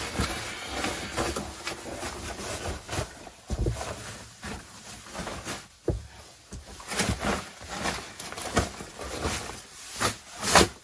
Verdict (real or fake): real